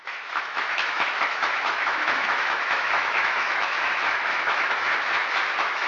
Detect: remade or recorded remade